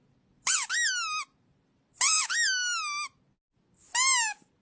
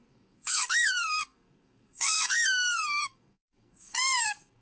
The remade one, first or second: second